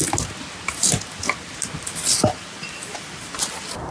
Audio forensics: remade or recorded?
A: recorded